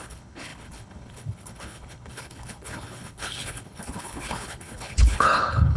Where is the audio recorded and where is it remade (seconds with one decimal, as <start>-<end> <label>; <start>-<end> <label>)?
0.0-5.8 remade